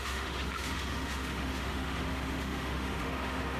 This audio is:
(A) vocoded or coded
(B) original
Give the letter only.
A